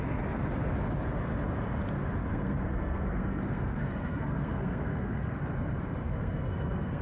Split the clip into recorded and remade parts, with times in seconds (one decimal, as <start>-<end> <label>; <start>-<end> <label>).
0.0-2.3 recorded; 2.3-5.4 remade; 5.4-6.0 recorded; 6.0-7.0 remade